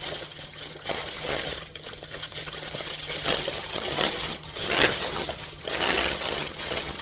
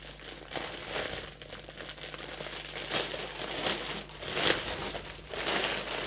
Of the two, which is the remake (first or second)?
first